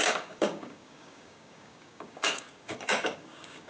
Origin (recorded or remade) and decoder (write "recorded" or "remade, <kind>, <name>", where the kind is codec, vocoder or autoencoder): remade, codec, DAC